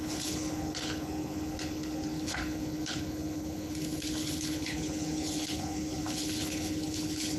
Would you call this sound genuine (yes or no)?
no